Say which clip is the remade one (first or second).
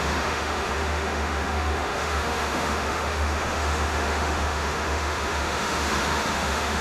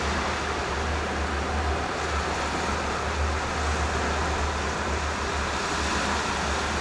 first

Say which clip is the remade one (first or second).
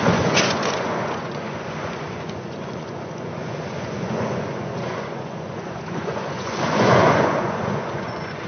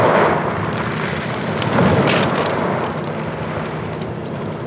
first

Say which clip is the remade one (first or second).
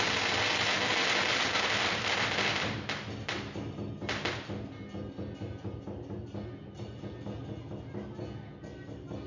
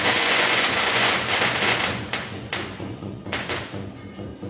second